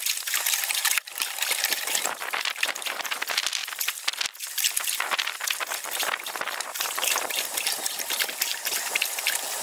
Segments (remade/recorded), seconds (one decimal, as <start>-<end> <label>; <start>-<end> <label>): 0.0-3.6 remade; 3.6-4.7 recorded; 4.7-9.6 remade